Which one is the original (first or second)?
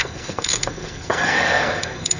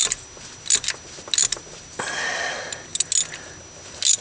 second